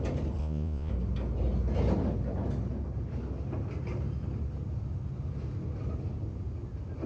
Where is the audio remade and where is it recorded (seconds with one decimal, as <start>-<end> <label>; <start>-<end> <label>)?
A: 0.0-0.4 recorded; 0.4-0.9 remade; 0.9-7.1 recorded